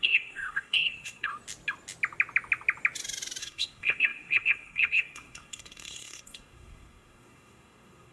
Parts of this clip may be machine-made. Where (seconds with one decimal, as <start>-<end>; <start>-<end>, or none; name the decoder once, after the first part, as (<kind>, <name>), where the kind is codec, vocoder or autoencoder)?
0.0-1.3 (codec, SNAC); 3.4-8.1